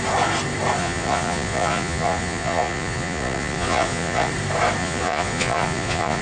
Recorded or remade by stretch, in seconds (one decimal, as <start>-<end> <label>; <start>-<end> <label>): 0.0-0.8 recorded; 0.8-4.3 remade; 4.3-4.8 recorded; 4.8-6.2 remade